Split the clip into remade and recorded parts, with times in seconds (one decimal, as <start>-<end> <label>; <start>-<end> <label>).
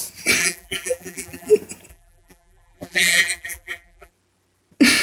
0.0-0.4 recorded; 0.4-1.5 remade; 1.5-1.9 recorded; 1.9-4.1 remade; 4.1-5.0 recorded